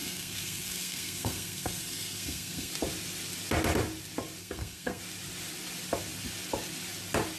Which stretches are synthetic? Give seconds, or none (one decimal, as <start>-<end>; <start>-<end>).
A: 0.0-2.7; 4.4-5.0